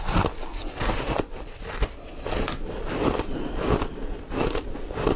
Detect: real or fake real